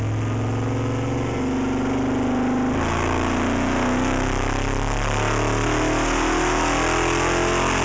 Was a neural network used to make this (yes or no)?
no